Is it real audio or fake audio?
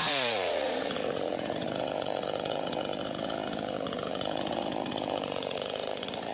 fake